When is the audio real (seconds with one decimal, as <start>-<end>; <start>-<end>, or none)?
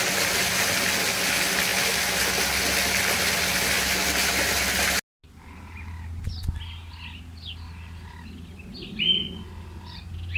0.0-10.4